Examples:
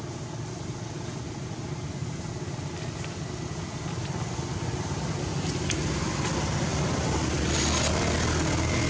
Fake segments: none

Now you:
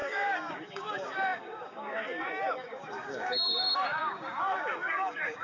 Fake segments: 0.0-5.4 (codec, DAC)

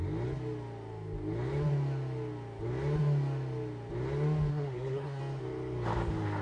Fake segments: 4.5-5.2 (codec, SNAC)

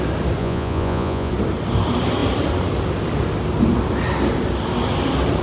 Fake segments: 0.4-1.3 (vocoder, Vocos)

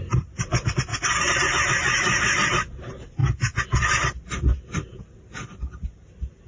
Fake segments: none

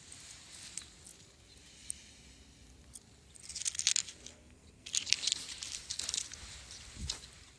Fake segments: 4.3-4.9 (codec, SNAC)

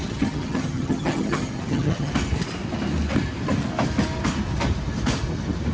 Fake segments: 0.0-2.1 (vocoder, HiFi-GAN)